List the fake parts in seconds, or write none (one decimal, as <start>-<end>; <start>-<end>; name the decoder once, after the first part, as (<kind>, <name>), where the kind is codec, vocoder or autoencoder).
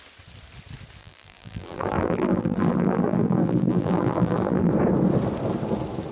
1.0-4.7 (vocoder, BigVGAN v2)